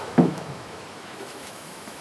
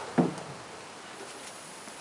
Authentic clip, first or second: second